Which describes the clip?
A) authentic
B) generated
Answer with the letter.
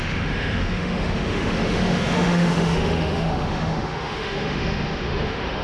B